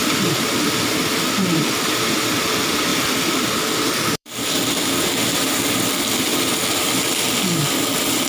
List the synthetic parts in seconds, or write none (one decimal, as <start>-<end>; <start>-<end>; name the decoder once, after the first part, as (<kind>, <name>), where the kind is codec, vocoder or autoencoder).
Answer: 0.0-2.4 (vocoder, BigVGAN v2); 2.9-4.5